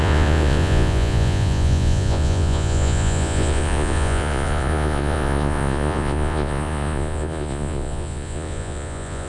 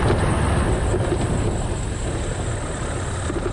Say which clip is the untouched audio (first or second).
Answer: second